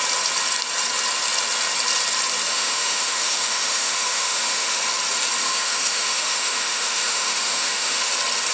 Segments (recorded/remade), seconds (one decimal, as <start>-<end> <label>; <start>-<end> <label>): 0.0-2.5 recorded; 2.5-4.8 remade; 4.8-5.4 recorded; 5.4-8.1 remade; 8.1-8.5 recorded

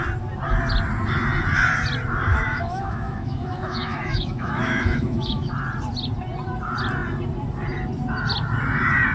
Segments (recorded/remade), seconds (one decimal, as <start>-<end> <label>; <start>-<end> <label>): 0.0-2.3 recorded; 2.3-5.5 remade; 5.5-9.1 recorded

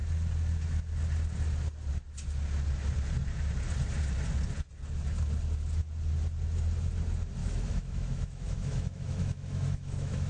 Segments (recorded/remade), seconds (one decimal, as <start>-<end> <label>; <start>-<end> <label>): 0.0-7.4 recorded; 7.4-10.3 remade